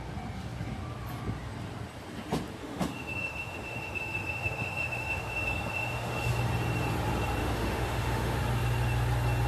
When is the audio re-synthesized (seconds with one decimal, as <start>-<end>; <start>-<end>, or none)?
2.6-6.3; 7.4-8.4